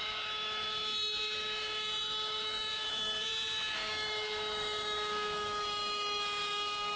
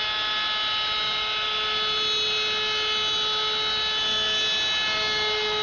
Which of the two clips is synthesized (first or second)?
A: first